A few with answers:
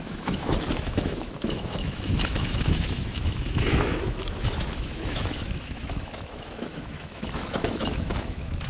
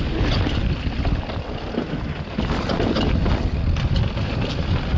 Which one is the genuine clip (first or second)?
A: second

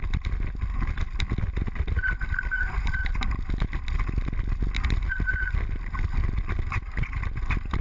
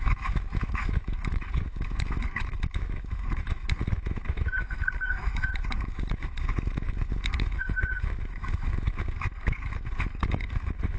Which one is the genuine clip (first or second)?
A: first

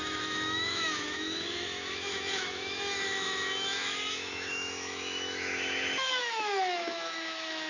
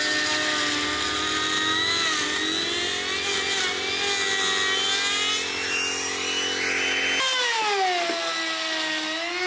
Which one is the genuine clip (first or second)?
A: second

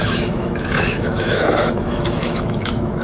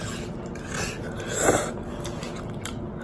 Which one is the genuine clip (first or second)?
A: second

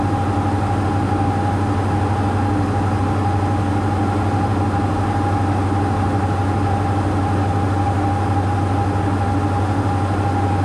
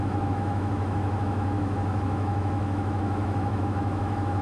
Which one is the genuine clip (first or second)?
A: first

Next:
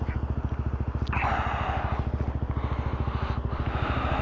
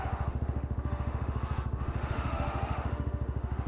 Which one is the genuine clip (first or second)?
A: first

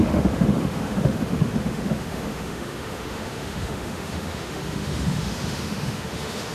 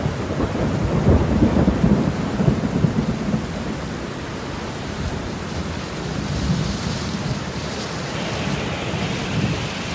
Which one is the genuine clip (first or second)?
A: second